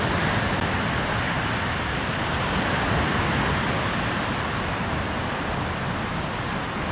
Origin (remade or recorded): recorded